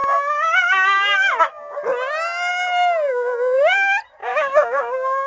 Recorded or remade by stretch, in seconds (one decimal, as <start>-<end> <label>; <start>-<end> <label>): 0.0-4.2 recorded; 4.2-5.3 remade

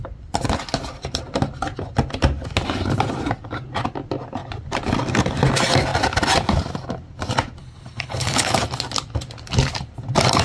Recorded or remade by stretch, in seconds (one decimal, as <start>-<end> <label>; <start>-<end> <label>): 0.0-7.6 recorded; 7.6-8.5 remade; 8.5-10.4 recorded

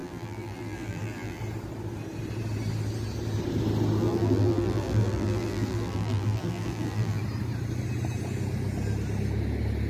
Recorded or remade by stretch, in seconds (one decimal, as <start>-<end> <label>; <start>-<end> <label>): 0.0-1.4 remade; 1.4-4.0 recorded; 4.0-7.2 remade; 7.2-9.9 recorded

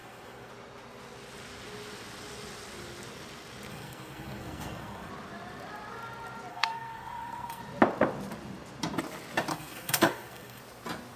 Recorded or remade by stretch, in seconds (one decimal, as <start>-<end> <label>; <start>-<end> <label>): 0.0-0.5 remade; 0.5-3.7 recorded; 3.7-5.1 remade; 5.1-6.5 recorded; 6.5-7.6 remade; 7.6-9.5 recorded; 9.5-10.6 remade; 10.6-11.2 recorded